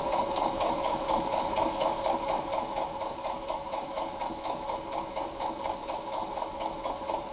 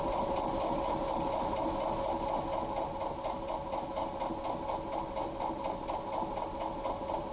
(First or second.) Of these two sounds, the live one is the second